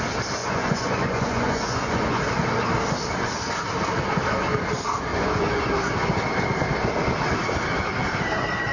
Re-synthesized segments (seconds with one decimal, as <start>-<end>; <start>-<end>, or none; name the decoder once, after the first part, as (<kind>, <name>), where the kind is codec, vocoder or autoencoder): 0.4-2.2 (vocoder, Vocos); 5.1-5.7